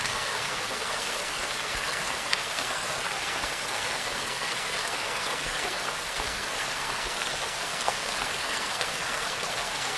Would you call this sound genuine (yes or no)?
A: no